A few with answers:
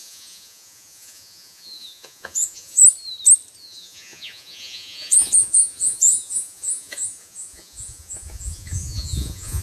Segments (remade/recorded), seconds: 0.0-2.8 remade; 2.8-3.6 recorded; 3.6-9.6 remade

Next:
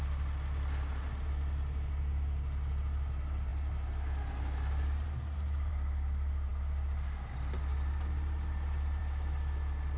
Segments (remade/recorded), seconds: 0.0-10.0 recorded